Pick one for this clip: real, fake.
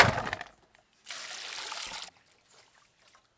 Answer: real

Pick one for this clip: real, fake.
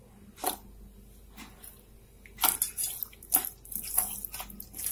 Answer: real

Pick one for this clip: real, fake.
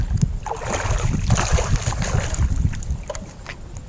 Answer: real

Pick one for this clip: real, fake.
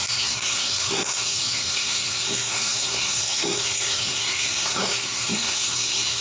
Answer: fake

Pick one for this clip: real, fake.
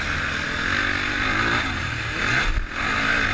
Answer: real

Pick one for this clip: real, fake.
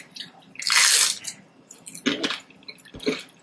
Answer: real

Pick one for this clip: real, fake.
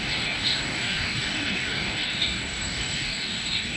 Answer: fake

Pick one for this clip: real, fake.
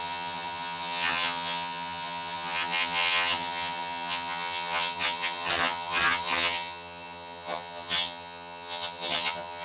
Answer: fake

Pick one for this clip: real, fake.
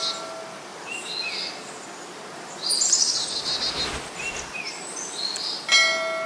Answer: real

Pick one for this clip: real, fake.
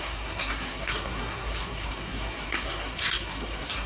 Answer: fake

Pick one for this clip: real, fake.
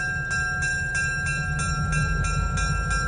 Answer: real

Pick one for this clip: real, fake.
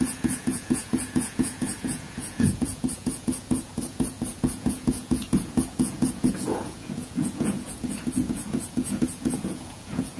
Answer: fake